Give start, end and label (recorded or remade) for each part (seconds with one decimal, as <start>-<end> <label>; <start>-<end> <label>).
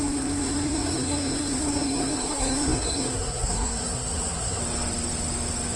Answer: 0.0-4.6 remade; 4.6-5.8 recorded